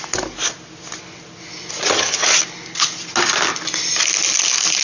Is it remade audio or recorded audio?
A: recorded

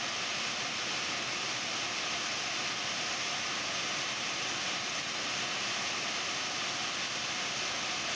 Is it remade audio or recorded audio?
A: recorded